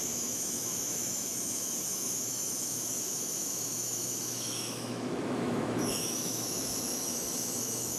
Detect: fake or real fake